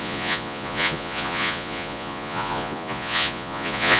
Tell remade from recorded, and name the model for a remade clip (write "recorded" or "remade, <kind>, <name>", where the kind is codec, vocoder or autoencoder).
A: remade, vocoder, Vocos